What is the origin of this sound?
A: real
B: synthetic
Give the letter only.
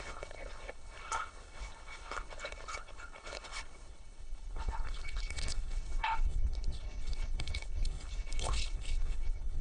B